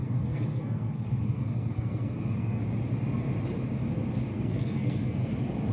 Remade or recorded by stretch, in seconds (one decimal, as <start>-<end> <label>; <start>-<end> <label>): 0.0-2.6 remade; 2.6-4.3 recorded; 4.3-5.3 remade; 5.3-5.7 recorded